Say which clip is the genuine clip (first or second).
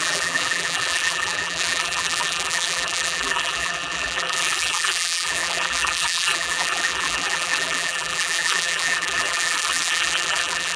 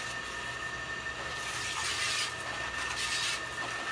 second